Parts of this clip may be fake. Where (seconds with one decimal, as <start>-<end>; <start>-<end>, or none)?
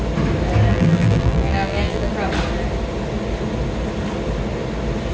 0.7-2.1